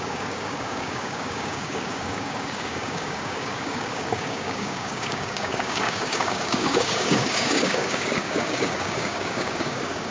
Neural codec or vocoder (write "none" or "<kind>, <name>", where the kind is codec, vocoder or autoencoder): codec, DAC